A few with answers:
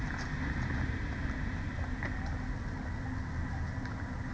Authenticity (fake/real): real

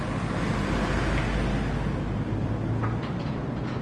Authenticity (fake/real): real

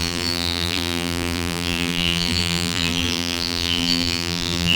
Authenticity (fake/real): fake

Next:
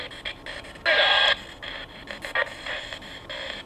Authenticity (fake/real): real